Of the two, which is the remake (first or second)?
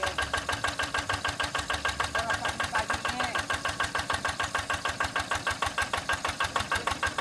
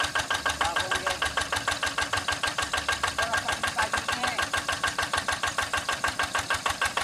second